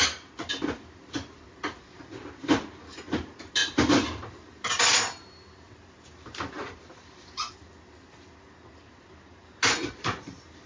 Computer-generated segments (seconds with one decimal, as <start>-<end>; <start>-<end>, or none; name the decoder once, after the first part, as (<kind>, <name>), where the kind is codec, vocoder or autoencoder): none